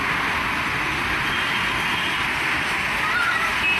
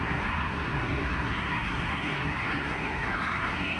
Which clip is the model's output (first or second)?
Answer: second